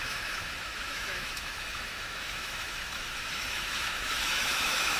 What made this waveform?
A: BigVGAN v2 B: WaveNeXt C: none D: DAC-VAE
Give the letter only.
D